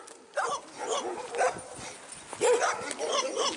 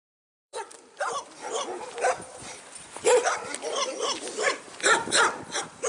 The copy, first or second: second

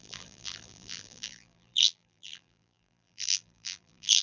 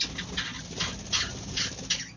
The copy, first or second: first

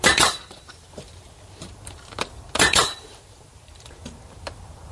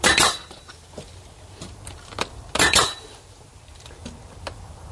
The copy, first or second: first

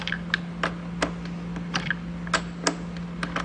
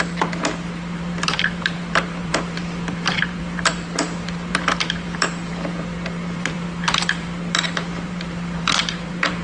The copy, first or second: second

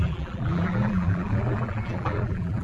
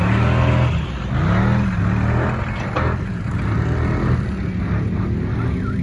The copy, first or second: first